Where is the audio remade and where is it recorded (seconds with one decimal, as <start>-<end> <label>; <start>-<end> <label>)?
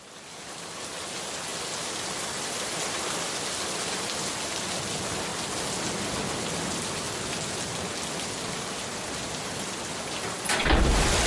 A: 0.0-11.3 recorded